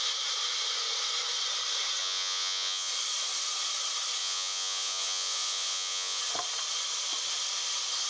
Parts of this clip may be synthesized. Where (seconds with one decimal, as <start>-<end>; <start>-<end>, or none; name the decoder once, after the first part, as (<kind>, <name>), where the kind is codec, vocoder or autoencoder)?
2.0-2.9 (vocoder, Vocos); 4.2-6.2